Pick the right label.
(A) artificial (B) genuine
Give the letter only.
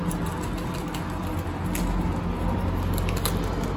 B